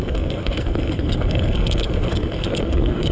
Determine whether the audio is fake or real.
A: fake